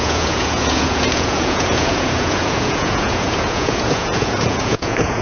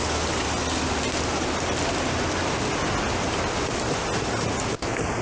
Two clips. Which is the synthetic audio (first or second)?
first